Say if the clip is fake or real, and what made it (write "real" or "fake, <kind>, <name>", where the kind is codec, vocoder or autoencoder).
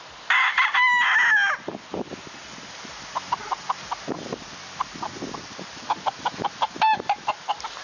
real